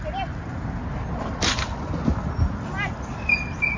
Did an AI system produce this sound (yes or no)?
no